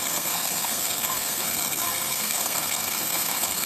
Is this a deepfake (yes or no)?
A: yes